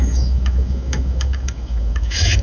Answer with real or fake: fake